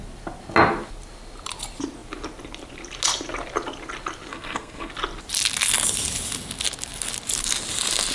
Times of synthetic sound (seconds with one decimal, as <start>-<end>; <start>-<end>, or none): 4.3-4.9